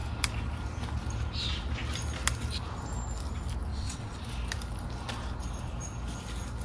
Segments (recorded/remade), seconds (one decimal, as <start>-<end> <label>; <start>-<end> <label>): 0.0-3.7 recorded; 3.7-4.2 remade; 4.2-6.6 recorded